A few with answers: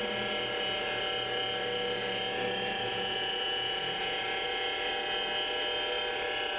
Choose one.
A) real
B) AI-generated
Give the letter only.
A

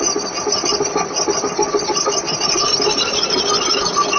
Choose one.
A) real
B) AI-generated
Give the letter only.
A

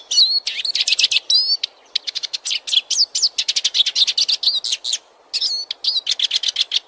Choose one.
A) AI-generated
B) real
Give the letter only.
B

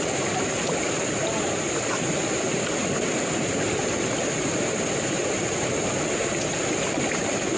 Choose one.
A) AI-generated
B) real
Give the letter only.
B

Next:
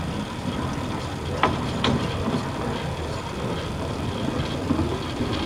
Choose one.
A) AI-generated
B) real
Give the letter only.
B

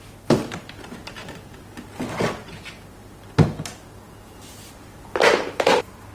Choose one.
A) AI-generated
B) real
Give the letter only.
B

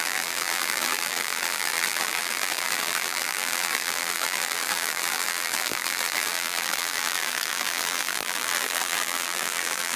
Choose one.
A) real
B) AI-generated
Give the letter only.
B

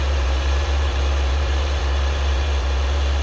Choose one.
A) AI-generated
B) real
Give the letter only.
A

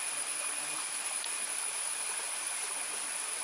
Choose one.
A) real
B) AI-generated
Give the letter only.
B